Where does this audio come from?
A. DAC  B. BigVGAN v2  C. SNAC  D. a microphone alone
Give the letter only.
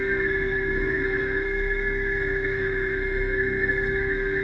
C